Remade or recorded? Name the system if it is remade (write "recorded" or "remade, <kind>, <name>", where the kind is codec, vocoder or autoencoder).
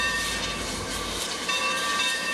remade, vocoder, BigVGAN v2